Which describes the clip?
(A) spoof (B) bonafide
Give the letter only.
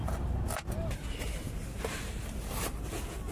B